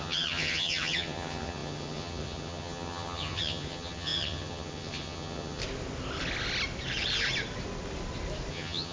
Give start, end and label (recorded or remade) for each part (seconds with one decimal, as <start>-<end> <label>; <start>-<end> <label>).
0.0-5.6 remade; 5.6-8.5 recorded; 8.5-8.9 remade